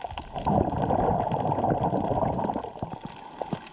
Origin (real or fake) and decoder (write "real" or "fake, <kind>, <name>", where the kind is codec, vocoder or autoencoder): real